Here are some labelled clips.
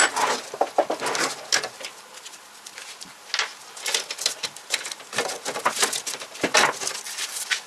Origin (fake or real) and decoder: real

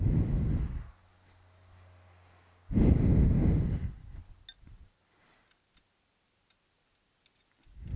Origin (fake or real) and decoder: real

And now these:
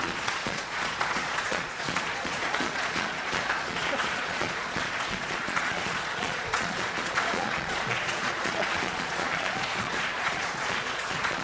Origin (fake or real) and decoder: fake, vocoder, Vocos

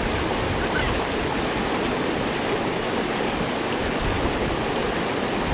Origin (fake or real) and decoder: real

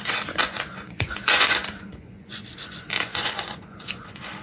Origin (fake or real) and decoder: fake, vocoder, Vocos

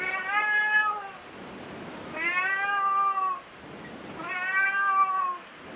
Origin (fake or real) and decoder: real